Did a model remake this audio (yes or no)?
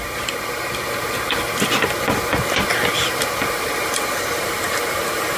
yes